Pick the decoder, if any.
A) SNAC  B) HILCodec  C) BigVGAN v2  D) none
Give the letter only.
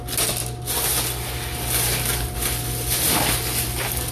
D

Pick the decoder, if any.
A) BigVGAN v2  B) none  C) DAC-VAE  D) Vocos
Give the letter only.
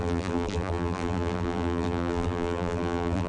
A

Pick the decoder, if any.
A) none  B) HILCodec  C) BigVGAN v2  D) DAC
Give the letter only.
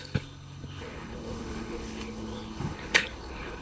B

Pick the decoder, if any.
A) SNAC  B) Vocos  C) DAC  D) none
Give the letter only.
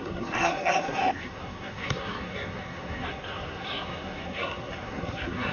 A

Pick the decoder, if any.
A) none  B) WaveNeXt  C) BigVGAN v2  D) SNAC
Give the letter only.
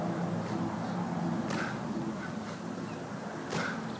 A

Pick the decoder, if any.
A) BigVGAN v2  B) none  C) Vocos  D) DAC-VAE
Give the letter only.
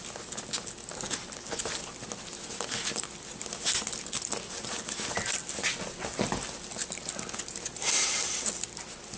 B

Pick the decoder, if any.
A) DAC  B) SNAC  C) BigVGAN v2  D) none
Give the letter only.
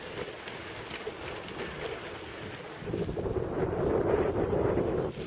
D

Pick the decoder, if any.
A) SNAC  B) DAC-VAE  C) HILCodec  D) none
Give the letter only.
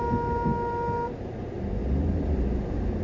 D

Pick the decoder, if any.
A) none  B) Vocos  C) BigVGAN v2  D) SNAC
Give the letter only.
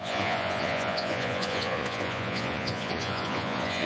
B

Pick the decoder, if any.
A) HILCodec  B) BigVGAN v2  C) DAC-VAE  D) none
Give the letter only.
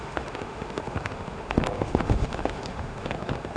C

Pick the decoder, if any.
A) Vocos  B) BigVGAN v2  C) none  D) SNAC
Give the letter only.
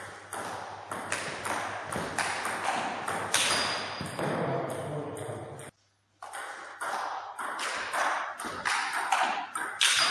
C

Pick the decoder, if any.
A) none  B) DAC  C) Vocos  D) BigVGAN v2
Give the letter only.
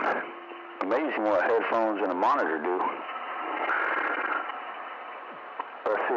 A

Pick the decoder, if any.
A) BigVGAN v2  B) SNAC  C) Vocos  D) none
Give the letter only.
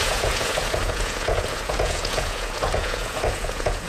C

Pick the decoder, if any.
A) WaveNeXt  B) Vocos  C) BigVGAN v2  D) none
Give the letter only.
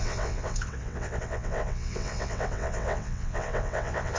A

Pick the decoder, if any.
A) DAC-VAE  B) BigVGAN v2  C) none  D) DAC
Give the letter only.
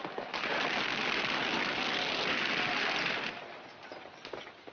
C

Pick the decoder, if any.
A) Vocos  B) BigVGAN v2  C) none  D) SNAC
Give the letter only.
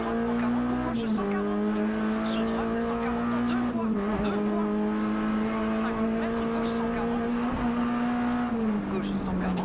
C